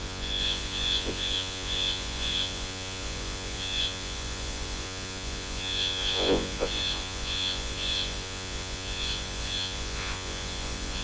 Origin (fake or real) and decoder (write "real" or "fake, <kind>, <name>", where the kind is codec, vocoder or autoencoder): fake, vocoder, Vocos